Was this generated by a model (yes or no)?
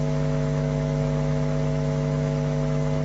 yes